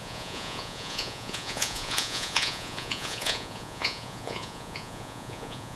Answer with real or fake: fake